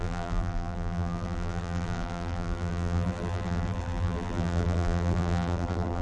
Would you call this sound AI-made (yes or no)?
yes